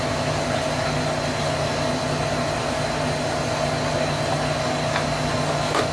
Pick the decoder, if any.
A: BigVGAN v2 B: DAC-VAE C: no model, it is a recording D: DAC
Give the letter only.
C